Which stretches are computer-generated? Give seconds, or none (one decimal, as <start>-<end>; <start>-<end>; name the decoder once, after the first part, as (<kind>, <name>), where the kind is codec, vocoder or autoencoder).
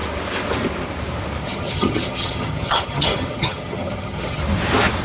1.4-4.4 (vocoder, HiFi-GAN)